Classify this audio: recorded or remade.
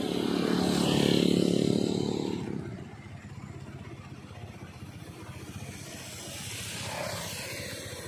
recorded